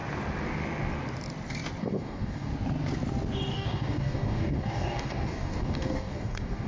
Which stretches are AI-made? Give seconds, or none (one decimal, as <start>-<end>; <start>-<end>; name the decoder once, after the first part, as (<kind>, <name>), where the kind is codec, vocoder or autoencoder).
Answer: 1.8-2.5 (codec, DAC); 3.5-6.7